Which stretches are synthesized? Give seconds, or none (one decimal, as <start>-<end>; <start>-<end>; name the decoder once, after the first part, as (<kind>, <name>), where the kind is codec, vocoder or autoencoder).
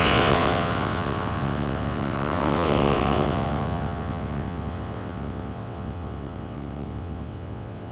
0.0-7.9 (vocoder, WaveNeXt)